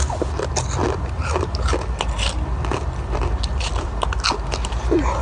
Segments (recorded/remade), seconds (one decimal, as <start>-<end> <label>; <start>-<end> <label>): 0.0-0.8 recorded; 0.8-3.9 remade; 3.9-5.2 recorded